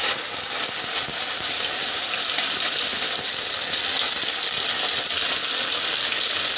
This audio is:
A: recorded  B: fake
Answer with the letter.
A